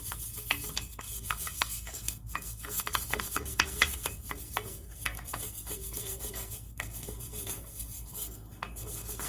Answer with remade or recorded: remade